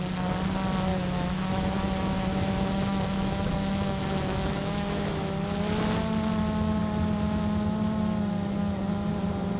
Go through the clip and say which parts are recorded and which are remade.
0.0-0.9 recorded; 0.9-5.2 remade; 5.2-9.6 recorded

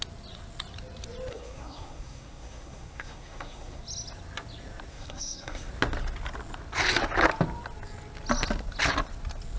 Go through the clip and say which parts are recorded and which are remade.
0.0-1.3 recorded; 1.3-3.8 remade; 3.8-4.9 recorded; 4.9-5.7 remade; 5.7-9.6 recorded

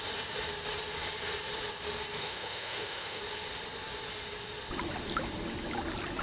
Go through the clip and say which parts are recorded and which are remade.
0.0-2.2 recorded; 2.2-3.2 remade; 3.2-6.2 recorded

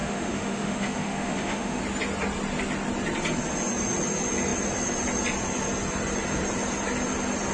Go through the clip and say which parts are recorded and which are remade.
0.0-1.8 remade; 1.8-7.5 recorded

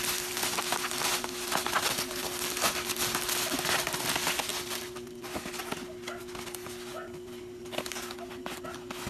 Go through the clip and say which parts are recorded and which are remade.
0.0-9.1 recorded